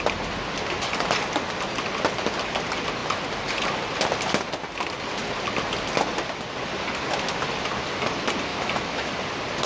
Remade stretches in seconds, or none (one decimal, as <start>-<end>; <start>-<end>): 8.5-9.1